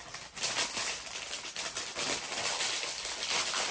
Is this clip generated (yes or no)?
no